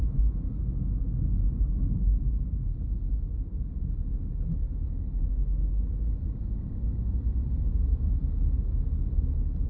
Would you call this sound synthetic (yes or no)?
no